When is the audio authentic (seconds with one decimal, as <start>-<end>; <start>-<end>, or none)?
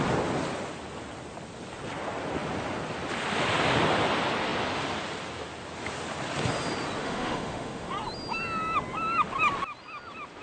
0.0-7.0; 7.9-10.4